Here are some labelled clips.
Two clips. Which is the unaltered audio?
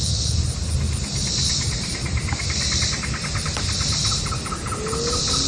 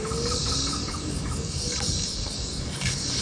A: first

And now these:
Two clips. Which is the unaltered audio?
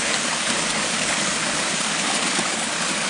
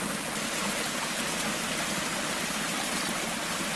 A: second